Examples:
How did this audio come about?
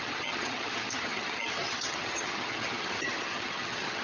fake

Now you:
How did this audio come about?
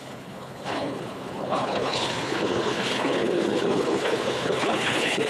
fake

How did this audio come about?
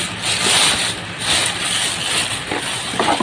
real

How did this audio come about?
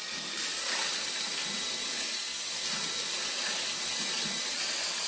real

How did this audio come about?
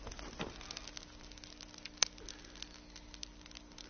real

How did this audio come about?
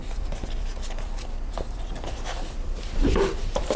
fake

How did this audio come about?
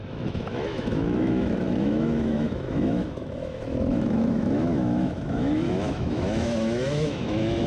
fake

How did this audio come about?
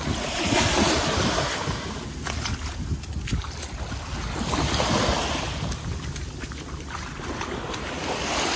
real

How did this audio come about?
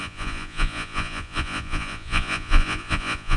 fake